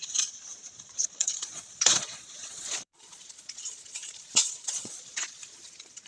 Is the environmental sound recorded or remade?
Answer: remade